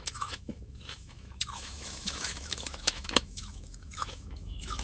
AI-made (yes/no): yes